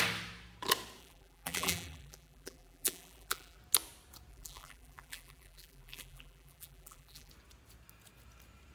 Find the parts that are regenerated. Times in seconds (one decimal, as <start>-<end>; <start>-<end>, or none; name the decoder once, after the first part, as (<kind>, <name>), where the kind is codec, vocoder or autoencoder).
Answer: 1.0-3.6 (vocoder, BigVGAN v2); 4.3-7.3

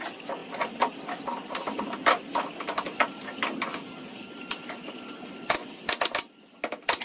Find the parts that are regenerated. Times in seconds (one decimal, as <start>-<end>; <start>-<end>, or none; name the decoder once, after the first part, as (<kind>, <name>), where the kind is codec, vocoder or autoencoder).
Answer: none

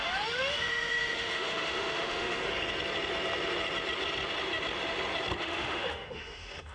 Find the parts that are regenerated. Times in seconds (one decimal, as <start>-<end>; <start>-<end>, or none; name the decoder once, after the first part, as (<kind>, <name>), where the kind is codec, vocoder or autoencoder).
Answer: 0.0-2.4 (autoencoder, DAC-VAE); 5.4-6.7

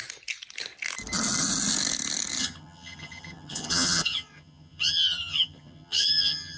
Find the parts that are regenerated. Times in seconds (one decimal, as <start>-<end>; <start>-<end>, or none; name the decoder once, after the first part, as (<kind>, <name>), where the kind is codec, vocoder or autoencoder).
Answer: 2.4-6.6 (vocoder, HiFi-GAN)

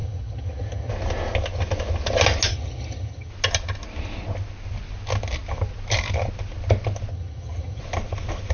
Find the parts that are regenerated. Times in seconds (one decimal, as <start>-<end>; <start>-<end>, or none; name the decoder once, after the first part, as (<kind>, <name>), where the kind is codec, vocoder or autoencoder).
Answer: 0.0-0.9 (vocoder, HiFi-GAN); 2.5-3.3; 7.1-7.8

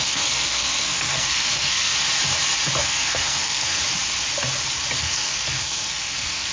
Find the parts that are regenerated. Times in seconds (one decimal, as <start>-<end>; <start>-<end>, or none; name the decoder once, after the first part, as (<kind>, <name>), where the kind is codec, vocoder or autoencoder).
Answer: 0.0-1.9 (codec, SNAC); 2.8-3.8; 5.0-6.5